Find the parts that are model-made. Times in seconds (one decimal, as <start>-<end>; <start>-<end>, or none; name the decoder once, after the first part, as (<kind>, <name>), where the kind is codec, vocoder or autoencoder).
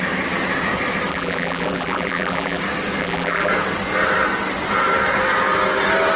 1.1-2.6 (vocoder, BigVGAN v2); 3.0-3.5